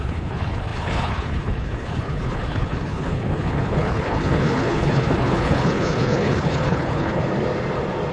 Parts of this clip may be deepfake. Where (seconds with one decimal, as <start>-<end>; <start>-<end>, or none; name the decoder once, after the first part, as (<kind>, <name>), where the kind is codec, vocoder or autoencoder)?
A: 0.0-7.2 (codec, HILCodec)